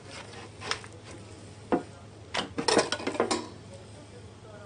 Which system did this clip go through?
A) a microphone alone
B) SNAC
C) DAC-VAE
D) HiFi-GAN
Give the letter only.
A